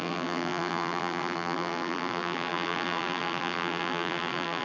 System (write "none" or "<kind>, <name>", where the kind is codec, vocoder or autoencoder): vocoder, BigVGAN v2